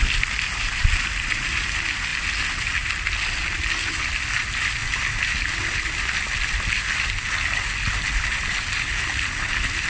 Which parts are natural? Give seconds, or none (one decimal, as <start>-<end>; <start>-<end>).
0.0-9.9